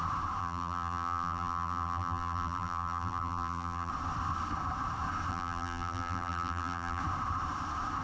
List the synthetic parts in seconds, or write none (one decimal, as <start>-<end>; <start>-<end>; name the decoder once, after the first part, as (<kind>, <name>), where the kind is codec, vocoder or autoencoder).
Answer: 0.4-3.9 (vocoder, BigVGAN v2); 5.3-7.0